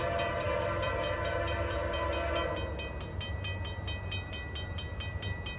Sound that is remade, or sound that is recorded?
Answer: recorded